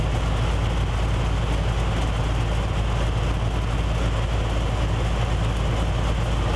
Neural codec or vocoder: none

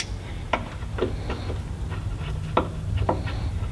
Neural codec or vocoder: none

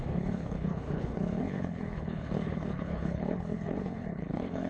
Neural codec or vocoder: codec, HILCodec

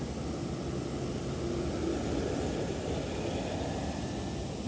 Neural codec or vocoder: none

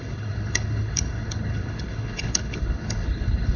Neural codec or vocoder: codec, HILCodec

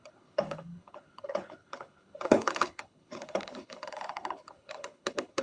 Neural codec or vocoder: codec, HILCodec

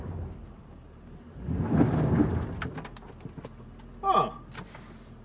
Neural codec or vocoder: none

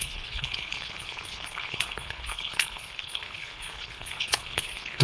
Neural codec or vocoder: codec, HILCodec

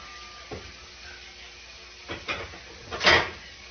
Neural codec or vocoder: none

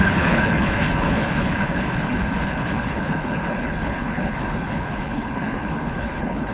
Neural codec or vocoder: codec, HILCodec